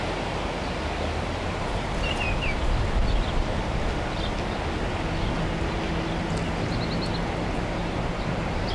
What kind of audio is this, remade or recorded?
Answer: recorded